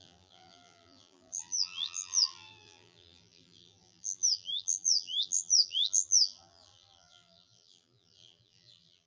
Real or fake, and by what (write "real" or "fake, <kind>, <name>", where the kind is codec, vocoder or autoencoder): fake, vocoder, BigVGAN v2